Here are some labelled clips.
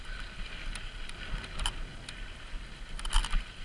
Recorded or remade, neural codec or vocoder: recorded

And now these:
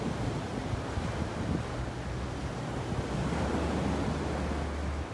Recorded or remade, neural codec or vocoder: recorded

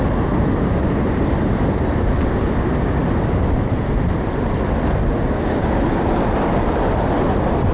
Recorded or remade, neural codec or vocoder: recorded